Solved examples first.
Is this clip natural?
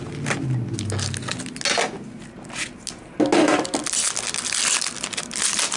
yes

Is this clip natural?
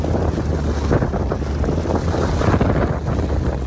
yes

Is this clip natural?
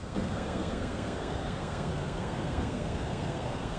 no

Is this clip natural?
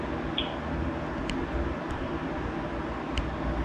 yes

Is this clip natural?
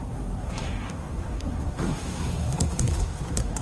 no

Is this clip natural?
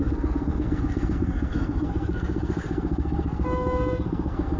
no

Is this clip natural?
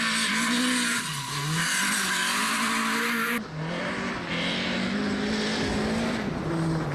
yes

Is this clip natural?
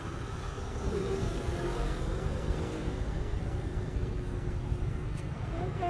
no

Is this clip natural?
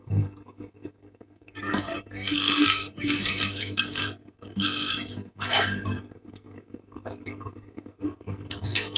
no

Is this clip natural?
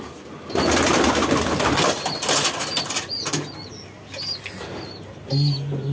yes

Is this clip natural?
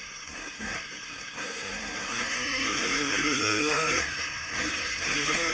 no